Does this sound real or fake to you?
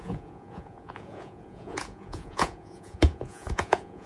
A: fake